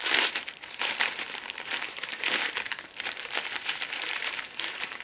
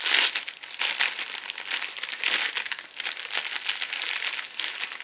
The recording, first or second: second